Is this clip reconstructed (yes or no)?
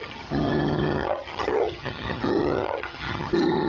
yes